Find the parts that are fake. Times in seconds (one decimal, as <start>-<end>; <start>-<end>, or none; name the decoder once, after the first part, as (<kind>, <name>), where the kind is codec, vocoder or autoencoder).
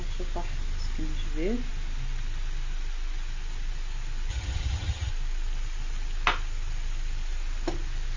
4.3-5.1 (vocoder, HiFi-GAN)